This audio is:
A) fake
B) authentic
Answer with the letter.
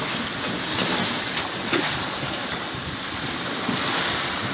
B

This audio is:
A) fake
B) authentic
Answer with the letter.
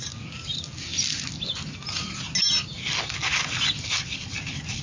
B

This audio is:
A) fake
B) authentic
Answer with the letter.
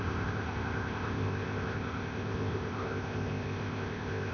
A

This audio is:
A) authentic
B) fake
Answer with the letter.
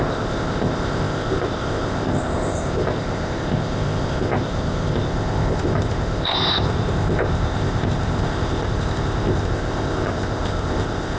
B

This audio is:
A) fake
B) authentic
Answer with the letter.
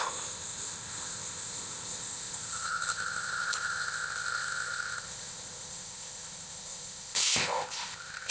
A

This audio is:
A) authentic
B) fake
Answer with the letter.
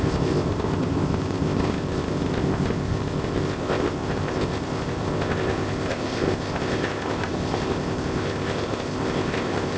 B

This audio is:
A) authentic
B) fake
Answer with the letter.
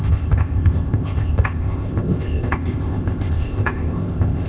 B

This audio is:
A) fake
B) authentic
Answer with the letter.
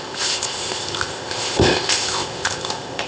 A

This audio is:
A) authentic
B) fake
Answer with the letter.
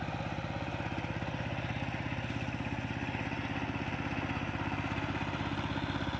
A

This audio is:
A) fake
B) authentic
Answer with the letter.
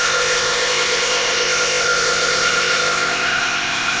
A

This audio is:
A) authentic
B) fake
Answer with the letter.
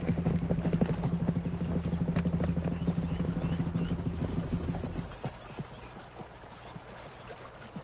A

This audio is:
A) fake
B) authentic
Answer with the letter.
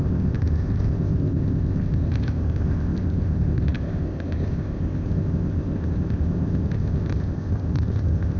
A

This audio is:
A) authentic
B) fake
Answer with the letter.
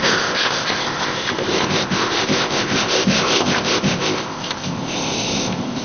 B